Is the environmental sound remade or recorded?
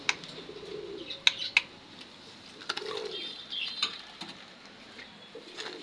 recorded